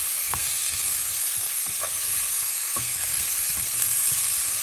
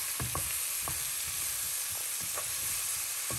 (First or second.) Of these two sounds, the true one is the second